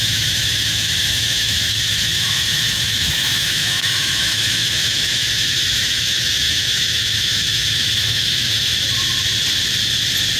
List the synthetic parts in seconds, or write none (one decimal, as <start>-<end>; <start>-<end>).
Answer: 0.0-8.7